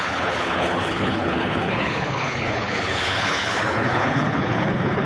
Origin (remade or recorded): remade